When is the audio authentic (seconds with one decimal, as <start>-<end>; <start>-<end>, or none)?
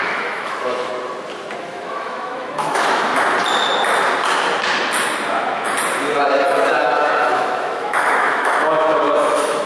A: 0.9-1.6; 3.1-6.2